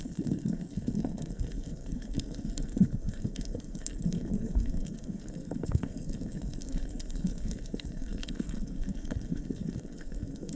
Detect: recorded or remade remade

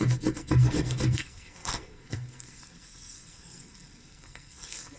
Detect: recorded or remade remade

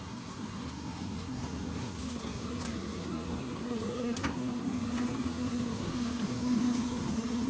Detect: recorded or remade remade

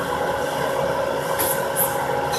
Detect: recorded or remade recorded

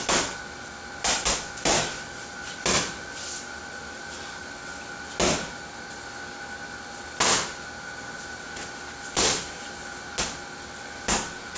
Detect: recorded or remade recorded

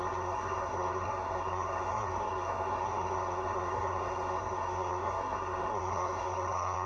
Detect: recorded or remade remade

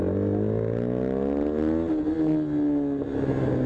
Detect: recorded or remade recorded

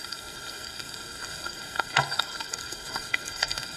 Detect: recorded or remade remade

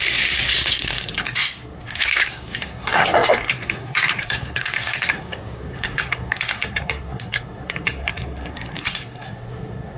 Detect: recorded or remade remade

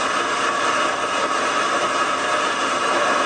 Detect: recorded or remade recorded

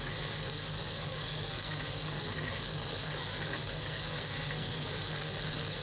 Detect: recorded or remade remade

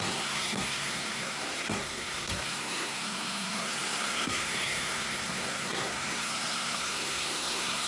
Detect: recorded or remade remade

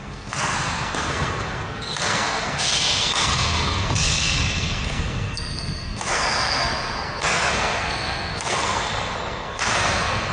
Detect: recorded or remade remade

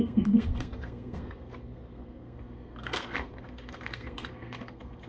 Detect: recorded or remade remade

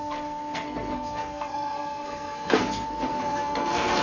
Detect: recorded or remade remade